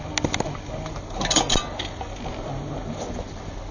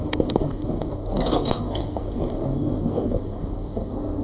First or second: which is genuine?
first